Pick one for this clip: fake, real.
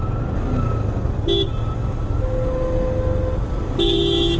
real